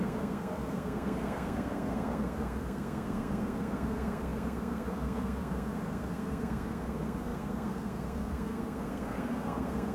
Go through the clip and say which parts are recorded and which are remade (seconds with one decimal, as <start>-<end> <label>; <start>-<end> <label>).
0.0-9.9 remade